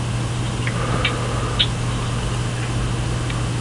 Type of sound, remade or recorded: recorded